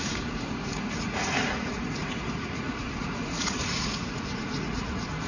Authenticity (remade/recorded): remade